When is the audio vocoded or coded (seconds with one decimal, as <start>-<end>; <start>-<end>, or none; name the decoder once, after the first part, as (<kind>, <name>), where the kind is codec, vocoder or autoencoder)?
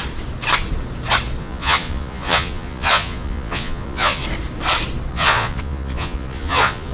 1.4-4.2 (vocoder, Vocos); 5.1-6.9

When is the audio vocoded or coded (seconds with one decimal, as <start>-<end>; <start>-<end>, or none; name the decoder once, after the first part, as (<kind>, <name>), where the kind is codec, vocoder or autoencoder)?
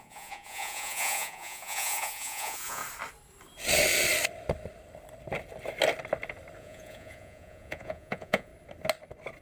0.0-2.8 (vocoder, Vocos); 6.6-8.5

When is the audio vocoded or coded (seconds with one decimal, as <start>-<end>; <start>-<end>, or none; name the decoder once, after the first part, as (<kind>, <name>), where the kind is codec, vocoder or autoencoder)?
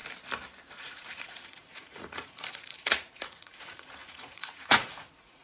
0.7-5.4 (vocoder, Vocos)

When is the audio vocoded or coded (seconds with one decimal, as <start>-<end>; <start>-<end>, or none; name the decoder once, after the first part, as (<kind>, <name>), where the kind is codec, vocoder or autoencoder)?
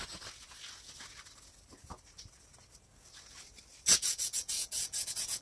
3.9-5.4 (vocoder, Vocos)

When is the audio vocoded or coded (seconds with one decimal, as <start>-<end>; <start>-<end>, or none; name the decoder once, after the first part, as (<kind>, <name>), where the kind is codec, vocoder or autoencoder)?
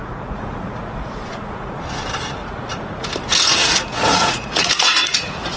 0.0-1.8 (vocoder, Vocos); 2.4-3.1; 3.6-5.6